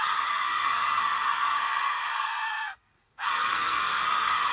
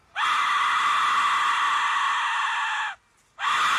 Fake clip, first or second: first